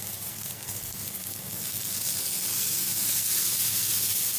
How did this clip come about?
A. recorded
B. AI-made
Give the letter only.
B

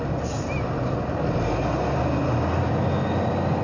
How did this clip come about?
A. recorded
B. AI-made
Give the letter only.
A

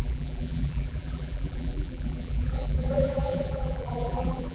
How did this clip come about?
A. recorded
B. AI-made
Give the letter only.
B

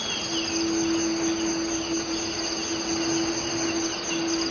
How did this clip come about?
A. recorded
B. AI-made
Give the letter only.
A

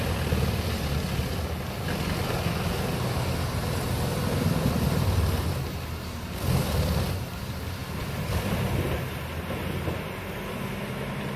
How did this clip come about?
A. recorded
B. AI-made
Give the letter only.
A